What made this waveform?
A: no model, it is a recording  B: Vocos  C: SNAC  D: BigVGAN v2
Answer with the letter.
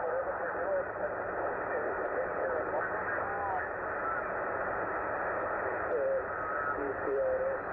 A